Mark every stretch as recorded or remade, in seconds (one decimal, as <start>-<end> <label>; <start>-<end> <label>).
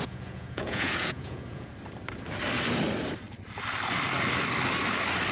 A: 0.0-1.7 remade; 1.7-5.3 recorded